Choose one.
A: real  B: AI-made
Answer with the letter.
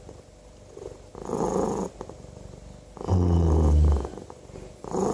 A